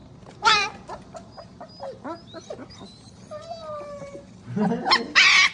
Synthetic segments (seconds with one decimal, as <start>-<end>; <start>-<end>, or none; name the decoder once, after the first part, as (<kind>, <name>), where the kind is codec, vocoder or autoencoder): 0.0-1.7 (vocoder, BigVGAN v2)